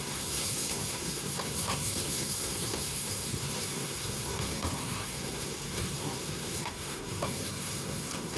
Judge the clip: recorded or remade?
remade